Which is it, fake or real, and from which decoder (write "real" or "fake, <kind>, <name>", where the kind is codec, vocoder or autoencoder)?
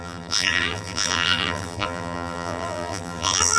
fake, vocoder, BigVGAN v2